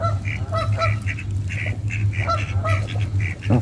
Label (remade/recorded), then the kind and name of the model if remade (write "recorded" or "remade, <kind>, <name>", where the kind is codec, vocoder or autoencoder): recorded